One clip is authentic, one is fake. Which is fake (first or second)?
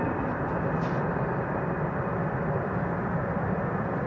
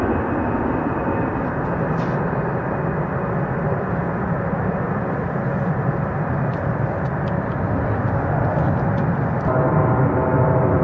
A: first